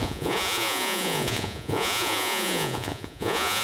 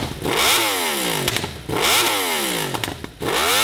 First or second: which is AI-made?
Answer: first